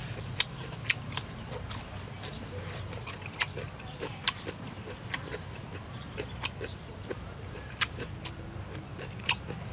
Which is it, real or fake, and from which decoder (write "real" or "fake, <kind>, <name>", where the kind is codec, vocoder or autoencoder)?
fake, vocoder, BigVGAN v2